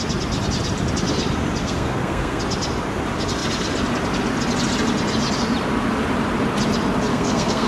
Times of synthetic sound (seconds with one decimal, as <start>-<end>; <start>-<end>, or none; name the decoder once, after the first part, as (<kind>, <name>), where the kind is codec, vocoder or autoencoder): 1.6-2.4 (codec, SNAC); 7.1-7.7